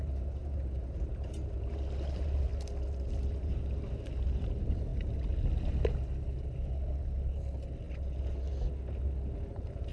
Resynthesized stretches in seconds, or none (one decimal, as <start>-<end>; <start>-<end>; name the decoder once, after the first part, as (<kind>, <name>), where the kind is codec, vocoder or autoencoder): 0.0-2.5 (vocoder, BigVGAN v2); 3.3-4.9; 9.5-9.9